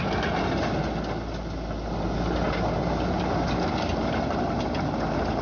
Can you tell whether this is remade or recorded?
recorded